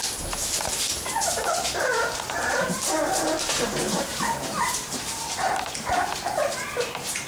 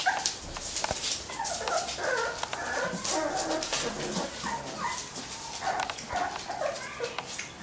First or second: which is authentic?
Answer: second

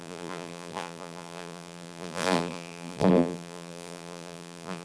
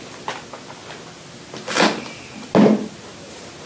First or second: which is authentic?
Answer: second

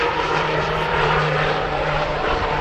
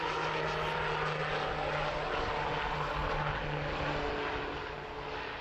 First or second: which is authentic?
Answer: second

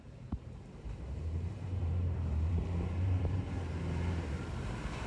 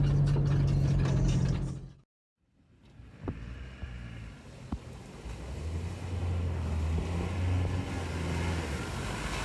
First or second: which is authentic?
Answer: second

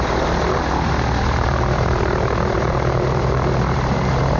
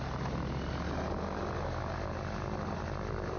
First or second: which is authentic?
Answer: second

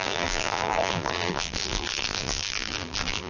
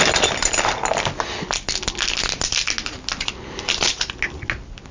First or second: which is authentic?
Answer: second